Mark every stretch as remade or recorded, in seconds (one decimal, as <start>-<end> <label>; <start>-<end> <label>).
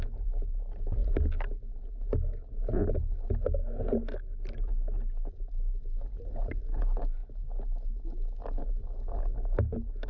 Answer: 0.0-10.1 recorded